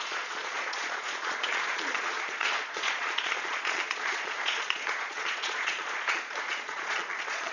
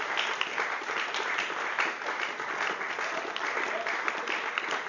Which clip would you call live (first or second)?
second